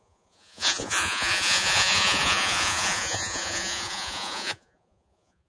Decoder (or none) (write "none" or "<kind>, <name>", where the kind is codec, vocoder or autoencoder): vocoder, Vocos